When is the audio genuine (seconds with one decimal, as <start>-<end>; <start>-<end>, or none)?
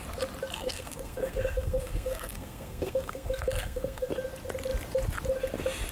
0.0-0.6; 4.1-5.9